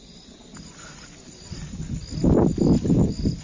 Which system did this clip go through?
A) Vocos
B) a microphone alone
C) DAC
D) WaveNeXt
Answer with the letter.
B